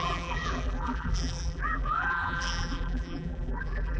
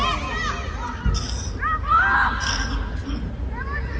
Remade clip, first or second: first